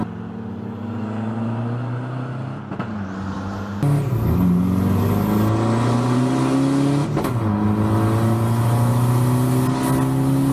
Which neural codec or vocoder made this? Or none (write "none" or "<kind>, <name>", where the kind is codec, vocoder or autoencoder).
none